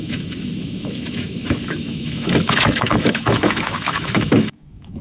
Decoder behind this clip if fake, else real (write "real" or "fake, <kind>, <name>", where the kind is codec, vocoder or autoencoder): fake, autoencoder, DAC-VAE